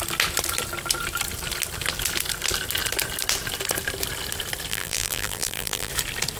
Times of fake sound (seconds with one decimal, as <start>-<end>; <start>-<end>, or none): 4.7-5.9